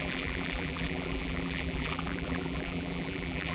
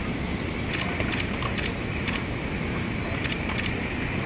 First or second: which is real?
second